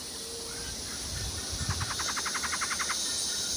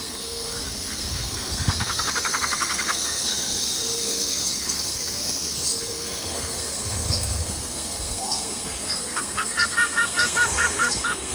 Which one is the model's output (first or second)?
second